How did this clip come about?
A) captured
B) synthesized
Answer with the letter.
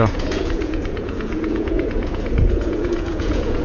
B